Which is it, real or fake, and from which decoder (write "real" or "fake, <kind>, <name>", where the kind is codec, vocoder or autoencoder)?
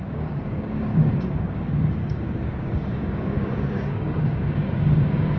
fake, codec, DAC